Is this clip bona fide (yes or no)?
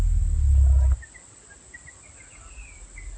yes